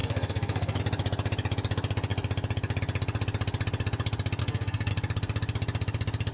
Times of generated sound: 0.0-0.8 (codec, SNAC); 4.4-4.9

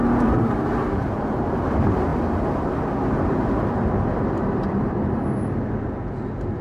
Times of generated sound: none

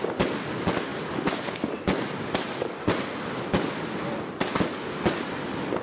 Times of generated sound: none

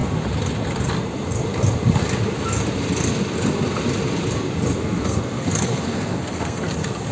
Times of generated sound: 4.8-6.6 (codec, SNAC)

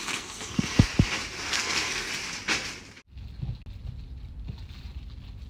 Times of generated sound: 0.0-0.9 (codec, SNAC); 1.4-2.1

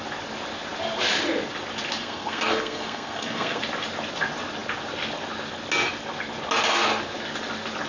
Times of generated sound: 2.0-3.6 (codec, SNAC)

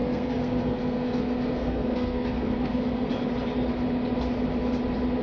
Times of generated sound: 0.0-3.1 (codec, SNAC)

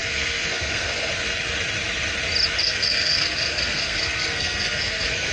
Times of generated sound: 0.0-1.1 (codec, SNAC); 2.6-5.3